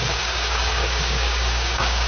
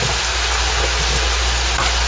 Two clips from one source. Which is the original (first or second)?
second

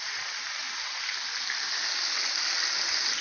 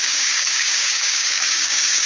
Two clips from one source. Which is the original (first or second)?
first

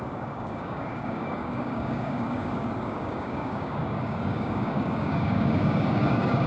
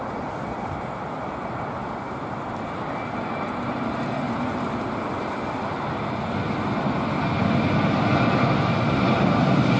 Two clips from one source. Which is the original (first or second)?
second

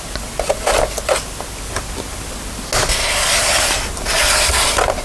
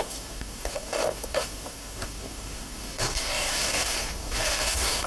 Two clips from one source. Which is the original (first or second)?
first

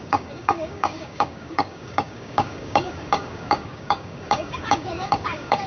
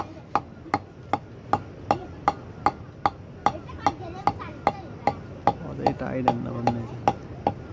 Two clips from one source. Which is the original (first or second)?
second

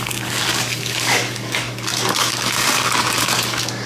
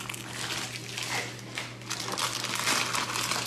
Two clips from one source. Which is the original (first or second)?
second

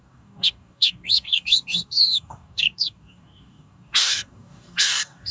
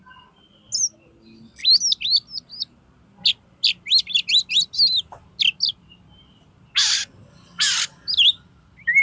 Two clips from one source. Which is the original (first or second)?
second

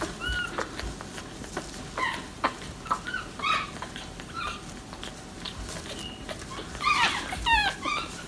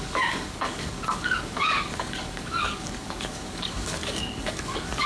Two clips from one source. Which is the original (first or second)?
first